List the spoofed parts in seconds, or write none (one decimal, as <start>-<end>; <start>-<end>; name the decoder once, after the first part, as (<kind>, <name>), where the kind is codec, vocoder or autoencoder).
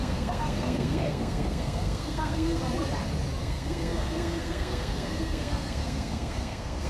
0.0-2.6 (codec, SNAC); 3.4-6.9